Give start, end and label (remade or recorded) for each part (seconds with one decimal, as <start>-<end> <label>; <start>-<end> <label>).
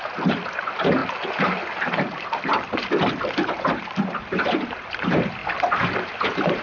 0.0-1.0 remade; 1.0-1.5 recorded; 1.5-5.4 remade; 5.4-6.6 recorded